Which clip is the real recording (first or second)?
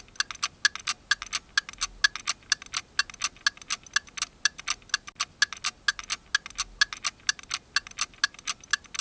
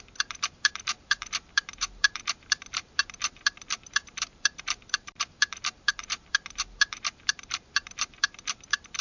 first